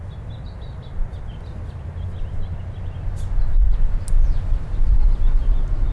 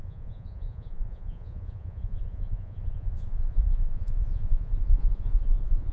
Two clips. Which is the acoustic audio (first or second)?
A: first